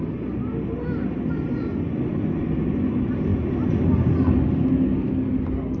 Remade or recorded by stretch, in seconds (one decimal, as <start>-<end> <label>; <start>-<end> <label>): 0.0-5.8 recorded